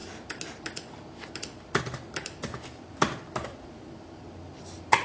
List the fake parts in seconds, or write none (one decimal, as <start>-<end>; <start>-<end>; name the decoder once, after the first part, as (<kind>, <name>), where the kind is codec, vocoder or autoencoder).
none